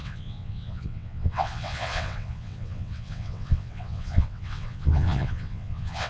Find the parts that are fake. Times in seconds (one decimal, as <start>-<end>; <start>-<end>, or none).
0.0-6.1